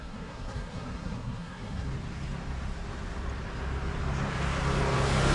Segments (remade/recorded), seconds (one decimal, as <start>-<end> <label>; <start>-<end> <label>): 0.0-1.9 remade; 1.9-5.3 recorded